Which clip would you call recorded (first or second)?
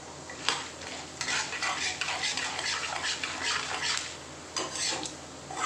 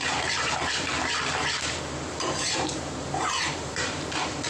first